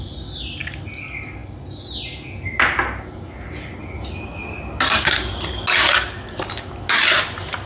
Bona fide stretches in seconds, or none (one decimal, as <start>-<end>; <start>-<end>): 0.0-7.7